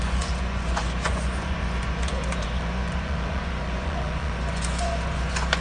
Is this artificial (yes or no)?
yes